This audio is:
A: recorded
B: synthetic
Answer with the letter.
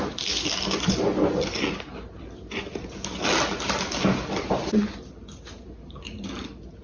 A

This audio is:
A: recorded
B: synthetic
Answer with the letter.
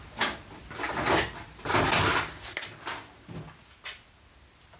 A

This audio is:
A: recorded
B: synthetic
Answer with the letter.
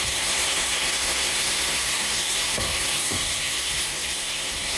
B